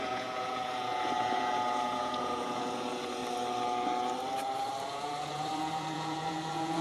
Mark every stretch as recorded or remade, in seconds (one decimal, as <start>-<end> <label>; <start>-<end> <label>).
0.0-3.2 remade; 3.2-4.4 recorded; 4.4-6.8 remade